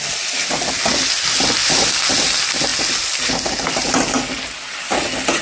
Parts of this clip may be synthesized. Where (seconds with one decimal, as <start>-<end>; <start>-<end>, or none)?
none